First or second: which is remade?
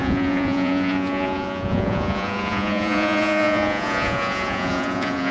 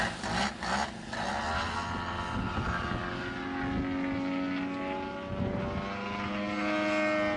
first